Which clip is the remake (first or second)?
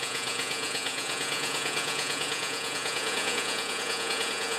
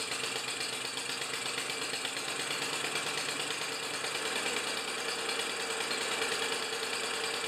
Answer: first